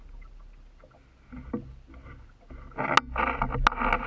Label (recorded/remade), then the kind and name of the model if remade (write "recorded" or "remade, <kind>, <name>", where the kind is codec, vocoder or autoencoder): recorded